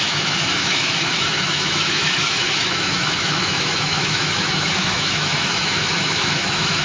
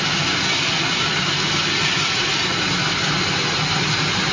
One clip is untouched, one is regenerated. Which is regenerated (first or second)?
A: first